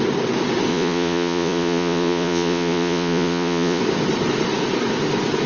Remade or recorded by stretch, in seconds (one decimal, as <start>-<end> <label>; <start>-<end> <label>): 0.0-0.7 recorded; 0.7-3.8 remade; 3.8-5.5 recorded